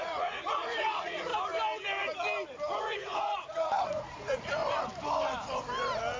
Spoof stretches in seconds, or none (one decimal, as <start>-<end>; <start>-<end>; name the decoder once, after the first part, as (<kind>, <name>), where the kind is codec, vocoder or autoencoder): 0.0-1.3 (vocoder, Vocos); 2.8-4.6